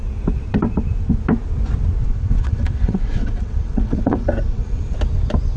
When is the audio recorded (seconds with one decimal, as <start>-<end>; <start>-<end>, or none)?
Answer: 0.0-2.0; 4.8-5.6